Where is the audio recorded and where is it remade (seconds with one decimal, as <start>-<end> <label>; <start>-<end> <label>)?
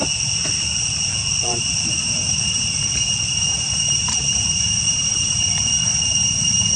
0.0-1.4 recorded; 1.4-5.5 remade; 5.5-5.9 recorded; 5.9-6.8 remade